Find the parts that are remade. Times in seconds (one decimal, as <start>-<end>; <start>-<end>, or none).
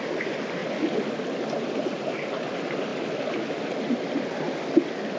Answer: none